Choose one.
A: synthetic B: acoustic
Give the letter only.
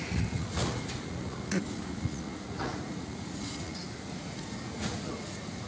A